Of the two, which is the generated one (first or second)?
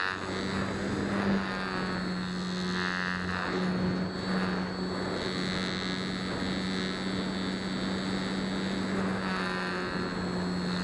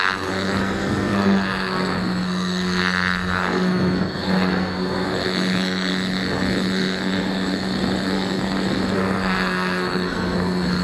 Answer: second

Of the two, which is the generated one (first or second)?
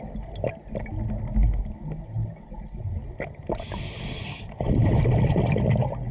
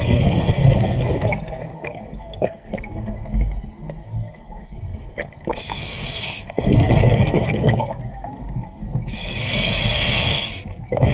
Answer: second